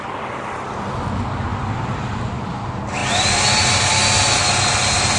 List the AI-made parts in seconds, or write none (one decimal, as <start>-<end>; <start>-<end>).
none